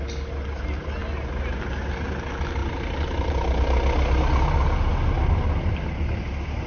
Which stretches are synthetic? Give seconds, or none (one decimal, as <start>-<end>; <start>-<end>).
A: none